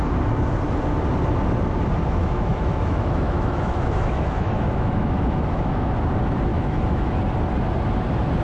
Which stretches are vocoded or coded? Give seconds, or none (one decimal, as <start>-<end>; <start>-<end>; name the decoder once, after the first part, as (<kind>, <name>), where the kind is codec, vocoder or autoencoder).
2.2-5.9 (autoencoder, DAC-VAE); 6.5-7.1